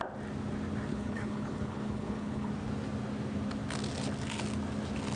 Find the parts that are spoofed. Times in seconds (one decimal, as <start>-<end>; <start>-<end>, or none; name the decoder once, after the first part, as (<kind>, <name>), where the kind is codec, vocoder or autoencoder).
0.9-2.5 (codec, HILCodec)